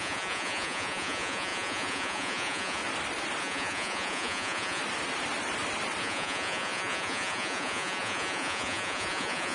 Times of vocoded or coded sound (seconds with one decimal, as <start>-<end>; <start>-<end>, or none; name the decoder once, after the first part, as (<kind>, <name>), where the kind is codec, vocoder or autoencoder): 0.0-2.8 (vocoder, Vocos); 3.4-4.8; 6.0-9.5